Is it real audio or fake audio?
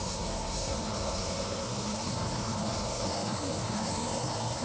fake